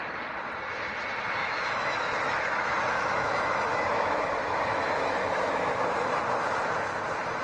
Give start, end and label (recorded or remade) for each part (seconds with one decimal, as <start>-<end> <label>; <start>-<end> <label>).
0.0-1.4 recorded; 1.4-5.8 remade; 5.8-7.4 recorded